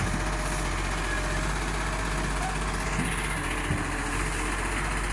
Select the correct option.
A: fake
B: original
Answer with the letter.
B